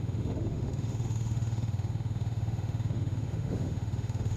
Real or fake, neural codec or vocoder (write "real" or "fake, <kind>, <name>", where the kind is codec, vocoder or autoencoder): fake, autoencoder, DAC-VAE